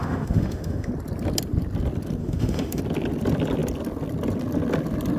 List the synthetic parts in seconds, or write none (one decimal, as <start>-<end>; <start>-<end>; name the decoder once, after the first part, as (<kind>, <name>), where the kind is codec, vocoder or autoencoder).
0.0-0.9 (autoencoder, DAC-VAE); 2.2-2.8